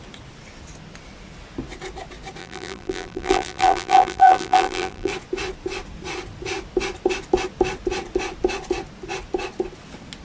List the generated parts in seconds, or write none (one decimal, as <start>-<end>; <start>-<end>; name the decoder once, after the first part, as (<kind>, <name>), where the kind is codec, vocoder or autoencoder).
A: 2.4-5.1 (vocoder, BigVGAN v2)